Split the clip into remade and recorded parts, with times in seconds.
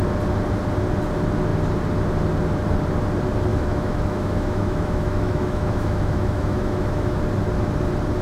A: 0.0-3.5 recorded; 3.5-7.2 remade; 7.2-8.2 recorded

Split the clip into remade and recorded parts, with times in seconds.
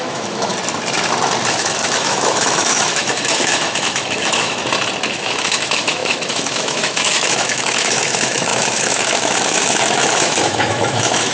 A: 0.0-0.5 remade; 0.5-1.5 recorded; 1.5-4.6 remade; 4.6-5.2 recorded; 5.2-11.3 remade